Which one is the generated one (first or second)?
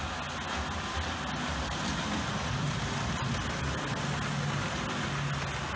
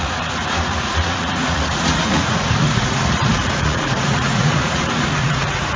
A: second